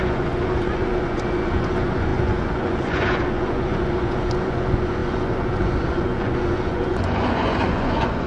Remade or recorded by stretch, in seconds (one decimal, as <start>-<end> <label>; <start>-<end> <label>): 0.0-8.3 remade